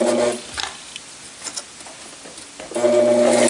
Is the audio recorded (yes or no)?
yes